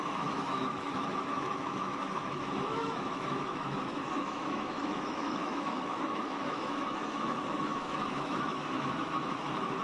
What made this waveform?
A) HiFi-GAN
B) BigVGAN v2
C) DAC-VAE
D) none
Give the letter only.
C